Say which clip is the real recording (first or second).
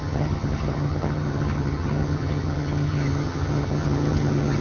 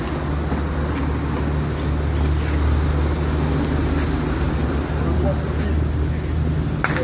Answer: second